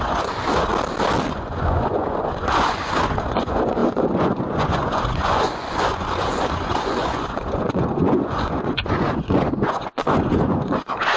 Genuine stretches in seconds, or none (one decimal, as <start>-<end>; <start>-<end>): 0.7-1.3